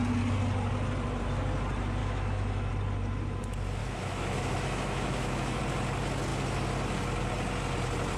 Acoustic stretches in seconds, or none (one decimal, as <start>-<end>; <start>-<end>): 0.0-2.0; 2.7-3.8; 5.6-8.2